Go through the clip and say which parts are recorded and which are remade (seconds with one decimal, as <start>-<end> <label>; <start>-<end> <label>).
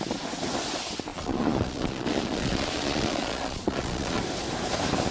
0.0-1.1 recorded; 1.1-4.2 remade; 4.2-5.1 recorded